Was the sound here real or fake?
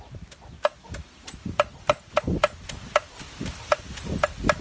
real